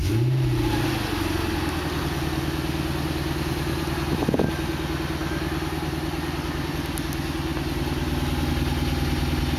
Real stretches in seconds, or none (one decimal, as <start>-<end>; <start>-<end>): 0.0-9.6